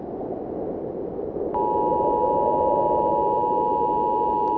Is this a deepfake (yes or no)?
no